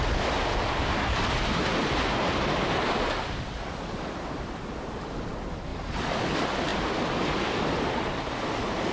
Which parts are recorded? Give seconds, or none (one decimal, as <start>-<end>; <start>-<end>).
0.0-8.9